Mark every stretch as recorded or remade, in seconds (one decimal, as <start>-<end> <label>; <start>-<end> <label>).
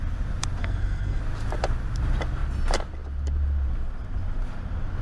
0.0-0.6 recorded; 0.6-1.2 remade; 1.2-5.0 recorded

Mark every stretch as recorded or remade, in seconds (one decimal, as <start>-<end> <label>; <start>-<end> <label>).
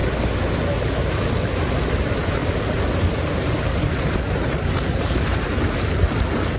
0.0-2.4 recorded; 2.4-6.6 remade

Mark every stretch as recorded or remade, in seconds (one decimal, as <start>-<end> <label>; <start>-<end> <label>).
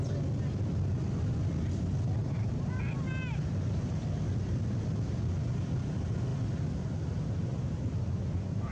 0.0-2.2 recorded; 2.2-2.8 remade; 2.8-8.7 recorded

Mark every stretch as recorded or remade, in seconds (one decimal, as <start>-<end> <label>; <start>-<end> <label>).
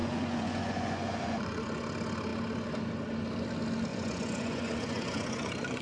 0.0-1.8 remade; 1.8-3.9 recorded; 3.9-5.8 remade